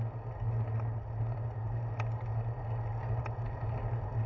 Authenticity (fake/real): real